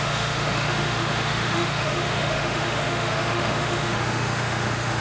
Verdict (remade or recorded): remade